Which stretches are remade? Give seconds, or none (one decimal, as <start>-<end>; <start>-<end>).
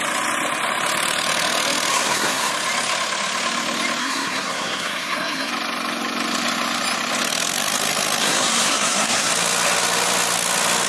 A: 1.9-2.5; 4.0-5.5; 8.2-9.3